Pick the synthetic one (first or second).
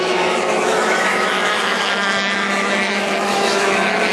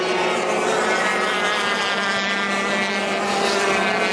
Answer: first